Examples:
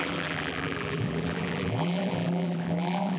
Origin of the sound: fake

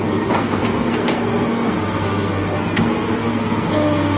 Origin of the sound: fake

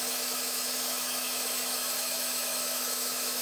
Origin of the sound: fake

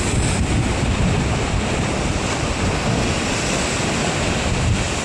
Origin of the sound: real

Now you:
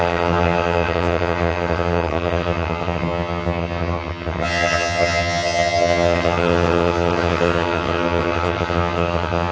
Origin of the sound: fake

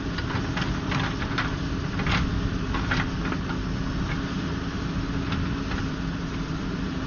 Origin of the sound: real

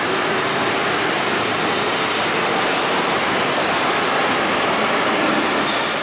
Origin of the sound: real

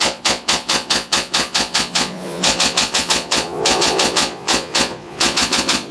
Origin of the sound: fake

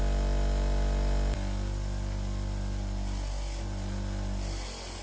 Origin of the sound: real